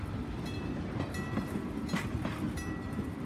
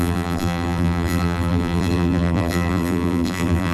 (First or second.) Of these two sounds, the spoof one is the second